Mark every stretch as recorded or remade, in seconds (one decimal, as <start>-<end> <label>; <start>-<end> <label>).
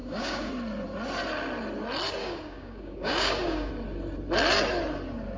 0.0-0.5 remade; 0.5-2.2 recorded; 2.2-3.7 remade; 3.7-5.4 recorded